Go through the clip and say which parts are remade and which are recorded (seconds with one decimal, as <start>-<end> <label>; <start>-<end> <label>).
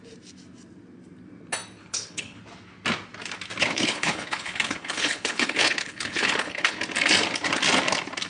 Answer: 0.0-1.8 recorded; 1.8-2.4 remade; 2.4-3.6 recorded; 3.6-6.8 remade; 6.8-8.3 recorded